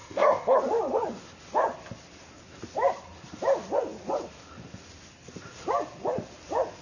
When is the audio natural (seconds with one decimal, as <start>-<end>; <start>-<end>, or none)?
0.6-6.8